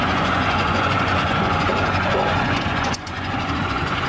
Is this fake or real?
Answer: fake